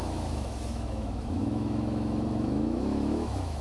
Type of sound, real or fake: fake